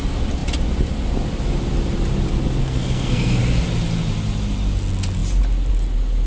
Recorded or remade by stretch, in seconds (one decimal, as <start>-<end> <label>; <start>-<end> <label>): 0.0-2.6 recorded; 2.6-3.4 remade; 3.4-6.3 recorded